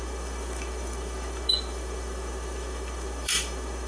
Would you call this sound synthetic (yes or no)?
yes